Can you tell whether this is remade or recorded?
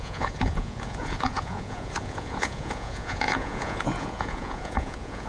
remade